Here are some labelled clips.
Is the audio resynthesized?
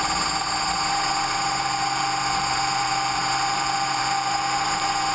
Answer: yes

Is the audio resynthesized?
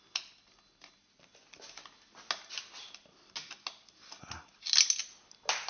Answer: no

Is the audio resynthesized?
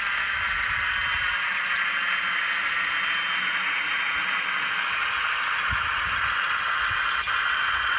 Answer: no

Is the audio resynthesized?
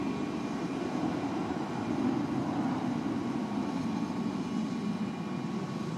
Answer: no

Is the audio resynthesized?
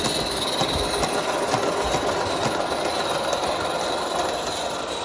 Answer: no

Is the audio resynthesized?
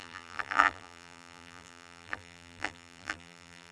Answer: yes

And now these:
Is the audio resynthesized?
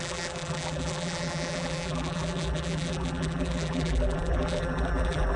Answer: yes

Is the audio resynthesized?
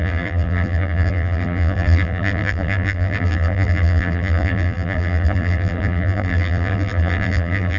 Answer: yes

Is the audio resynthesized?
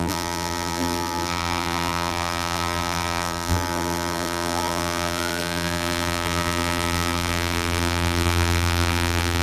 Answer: yes